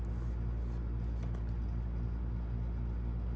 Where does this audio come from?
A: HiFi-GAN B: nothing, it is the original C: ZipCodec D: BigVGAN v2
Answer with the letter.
B